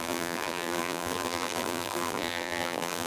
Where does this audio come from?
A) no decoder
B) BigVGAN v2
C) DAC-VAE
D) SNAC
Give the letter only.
B